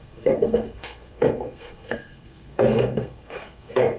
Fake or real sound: fake